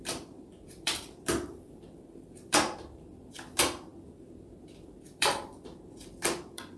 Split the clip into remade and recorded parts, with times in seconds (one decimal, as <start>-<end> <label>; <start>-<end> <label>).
0.0-6.8 remade

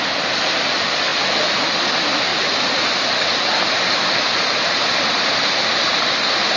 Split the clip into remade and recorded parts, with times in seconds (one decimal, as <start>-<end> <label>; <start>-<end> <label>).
0.0-2.3 recorded; 2.3-6.6 remade

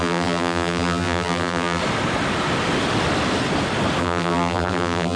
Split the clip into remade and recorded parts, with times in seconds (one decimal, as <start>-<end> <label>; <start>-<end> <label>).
0.0-1.8 remade; 1.8-4.0 recorded; 4.0-5.2 remade

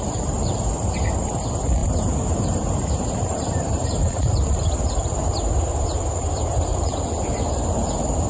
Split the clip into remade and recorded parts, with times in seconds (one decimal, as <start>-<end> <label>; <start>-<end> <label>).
0.0-1.8 recorded; 1.8-4.0 remade; 4.0-6.7 recorded; 6.7-7.3 remade; 7.3-8.3 recorded